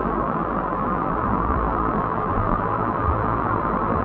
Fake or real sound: fake